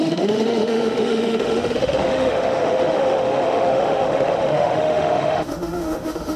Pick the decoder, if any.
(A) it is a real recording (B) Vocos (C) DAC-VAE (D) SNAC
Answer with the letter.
C